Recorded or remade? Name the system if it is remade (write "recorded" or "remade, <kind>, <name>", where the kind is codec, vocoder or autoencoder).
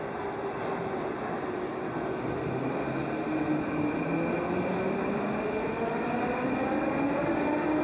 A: recorded